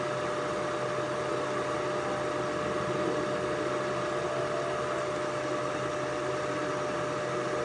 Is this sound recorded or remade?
recorded